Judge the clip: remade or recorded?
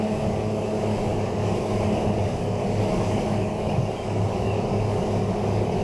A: remade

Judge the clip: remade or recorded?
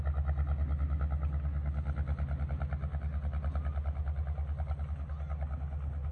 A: recorded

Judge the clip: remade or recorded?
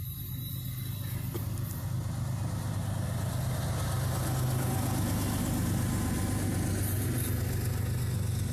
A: recorded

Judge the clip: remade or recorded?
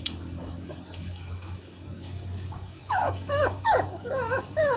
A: remade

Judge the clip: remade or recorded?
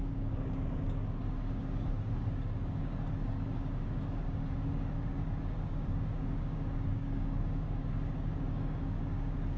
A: remade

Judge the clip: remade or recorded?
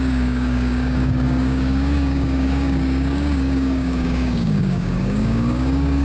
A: remade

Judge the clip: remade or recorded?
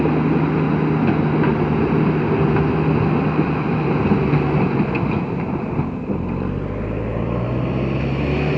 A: recorded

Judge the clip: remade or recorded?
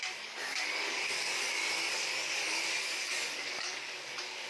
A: remade